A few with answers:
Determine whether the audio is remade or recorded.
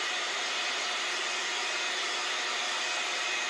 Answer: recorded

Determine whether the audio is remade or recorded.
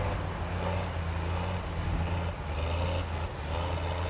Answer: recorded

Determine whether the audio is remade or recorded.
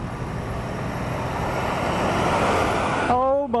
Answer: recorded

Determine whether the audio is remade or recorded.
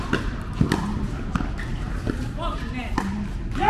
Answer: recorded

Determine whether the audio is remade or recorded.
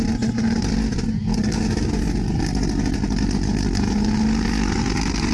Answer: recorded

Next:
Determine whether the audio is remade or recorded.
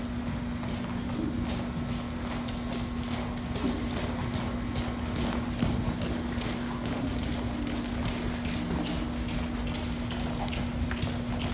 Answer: recorded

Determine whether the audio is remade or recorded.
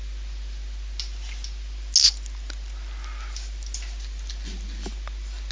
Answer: recorded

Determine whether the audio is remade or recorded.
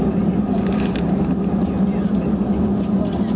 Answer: recorded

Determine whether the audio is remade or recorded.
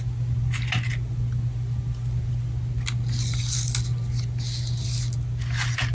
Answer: recorded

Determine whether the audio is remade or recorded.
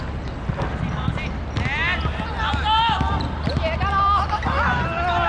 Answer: recorded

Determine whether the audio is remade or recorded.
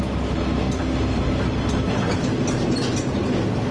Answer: recorded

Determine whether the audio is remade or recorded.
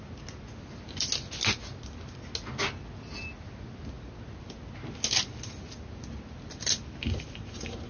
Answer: recorded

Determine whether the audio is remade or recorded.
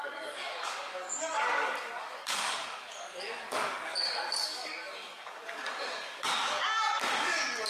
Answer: remade